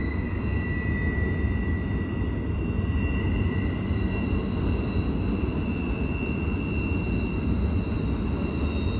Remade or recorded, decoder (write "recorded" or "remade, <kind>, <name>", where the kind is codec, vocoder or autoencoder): recorded